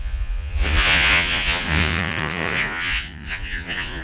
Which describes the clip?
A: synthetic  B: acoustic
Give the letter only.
A